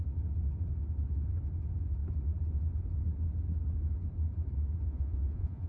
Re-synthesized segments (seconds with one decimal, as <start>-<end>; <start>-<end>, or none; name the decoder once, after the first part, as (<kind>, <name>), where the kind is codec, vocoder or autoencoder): 4.9-5.7 (vocoder, Vocos)